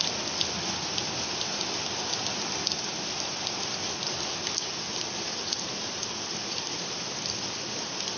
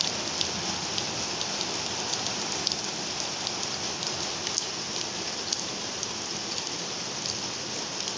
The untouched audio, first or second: second